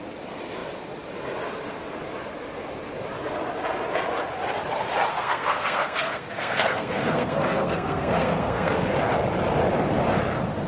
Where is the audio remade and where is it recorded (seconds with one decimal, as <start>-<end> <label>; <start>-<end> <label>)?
0.0-5.1 recorded; 5.1-8.9 remade; 8.9-10.7 recorded